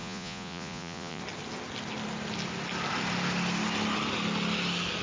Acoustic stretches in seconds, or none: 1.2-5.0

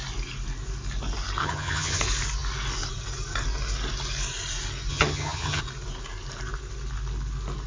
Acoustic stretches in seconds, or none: 0.0-1.4; 2.0-4.9; 5.6-7.7

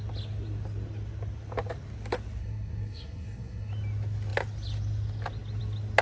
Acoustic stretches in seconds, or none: 0.0-2.4; 3.7-6.0

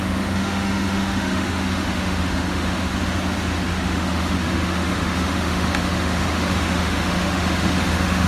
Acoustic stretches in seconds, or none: 2.9-3.7

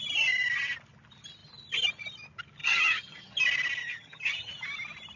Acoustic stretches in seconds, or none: 0.0-2.6; 3.4-3.8; 4.5-5.2

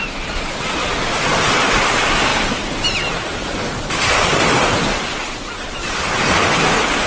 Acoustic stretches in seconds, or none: 0.0-7.1

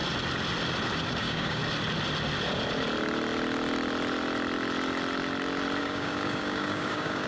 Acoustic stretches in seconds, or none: 0.0-1.2; 1.6-5.8

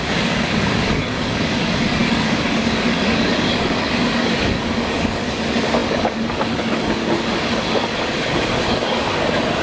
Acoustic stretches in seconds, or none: none